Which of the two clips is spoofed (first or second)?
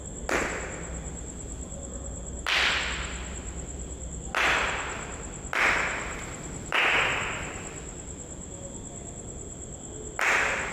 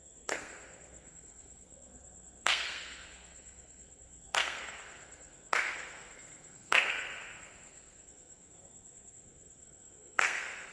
second